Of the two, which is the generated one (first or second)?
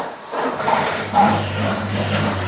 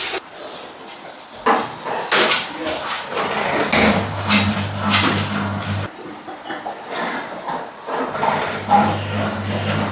first